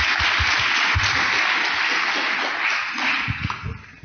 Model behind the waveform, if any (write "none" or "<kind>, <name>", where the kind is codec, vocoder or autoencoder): none